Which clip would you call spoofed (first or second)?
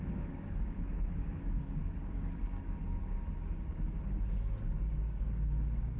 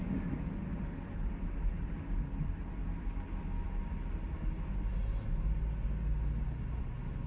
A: first